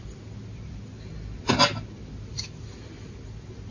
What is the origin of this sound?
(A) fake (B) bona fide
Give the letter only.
B